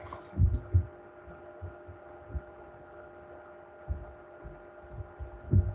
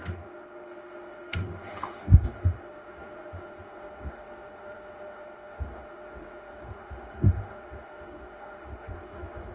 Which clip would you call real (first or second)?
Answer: first